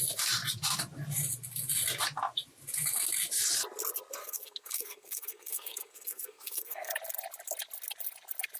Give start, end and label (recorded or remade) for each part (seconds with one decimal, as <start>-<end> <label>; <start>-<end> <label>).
0.0-4.2 recorded; 4.2-6.9 remade; 6.9-8.6 recorded